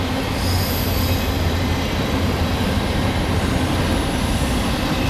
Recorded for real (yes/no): yes